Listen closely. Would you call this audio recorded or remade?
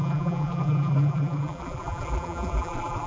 remade